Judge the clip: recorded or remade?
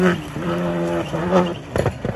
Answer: recorded